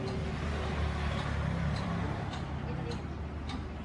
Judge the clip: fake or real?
real